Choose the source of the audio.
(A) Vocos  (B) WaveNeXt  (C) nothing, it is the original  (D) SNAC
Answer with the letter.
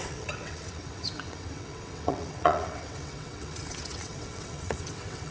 B